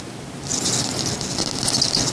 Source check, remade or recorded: recorded